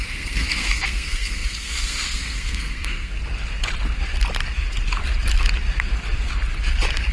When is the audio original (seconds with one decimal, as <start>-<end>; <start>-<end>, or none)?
3.1-7.1